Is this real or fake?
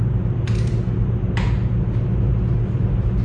real